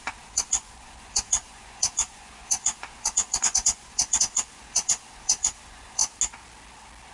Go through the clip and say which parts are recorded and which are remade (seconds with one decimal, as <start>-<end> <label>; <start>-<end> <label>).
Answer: 0.0-6.0 remade; 6.0-7.1 recorded